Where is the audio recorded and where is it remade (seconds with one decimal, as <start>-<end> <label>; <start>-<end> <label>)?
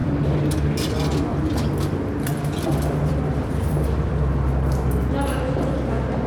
0.0-0.5 remade; 0.5-1.3 recorded; 1.3-5.1 remade; 5.1-6.3 recorded